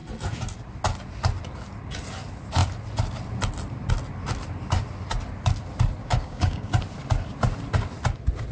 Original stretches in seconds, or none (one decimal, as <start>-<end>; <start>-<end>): 0.0-6.0; 6.7-8.5